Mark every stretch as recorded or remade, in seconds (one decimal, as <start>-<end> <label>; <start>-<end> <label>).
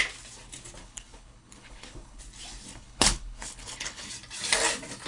0.0-0.8 recorded; 0.8-2.2 remade; 2.2-2.7 recorded; 2.7-4.1 remade; 4.1-5.1 recorded